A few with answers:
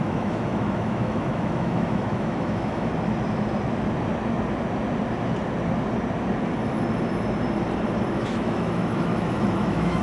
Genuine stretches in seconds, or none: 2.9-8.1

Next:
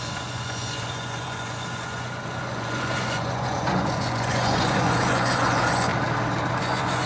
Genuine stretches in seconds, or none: 5.9-6.6

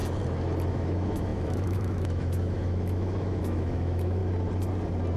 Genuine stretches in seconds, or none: 0.0-0.7; 4.2-5.2